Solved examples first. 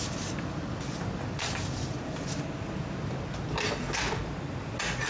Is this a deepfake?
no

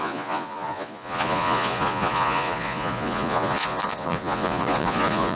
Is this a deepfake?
yes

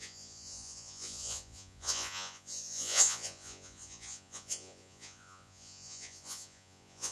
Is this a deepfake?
yes